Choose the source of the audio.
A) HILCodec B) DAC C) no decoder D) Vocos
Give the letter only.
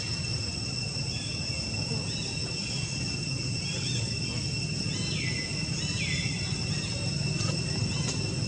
C